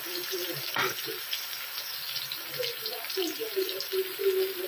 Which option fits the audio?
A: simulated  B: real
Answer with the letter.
B